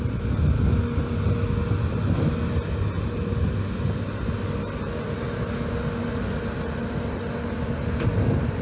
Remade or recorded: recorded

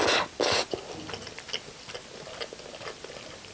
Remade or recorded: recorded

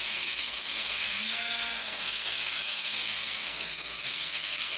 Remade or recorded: remade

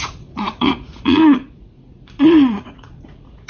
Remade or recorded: remade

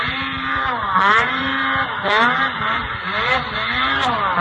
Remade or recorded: remade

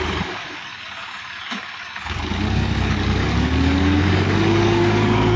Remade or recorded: remade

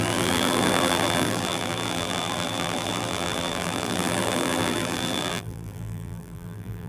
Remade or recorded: remade